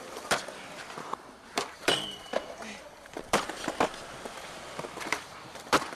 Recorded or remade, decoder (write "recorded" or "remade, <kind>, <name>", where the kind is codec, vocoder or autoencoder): remade, vocoder, BigVGAN v2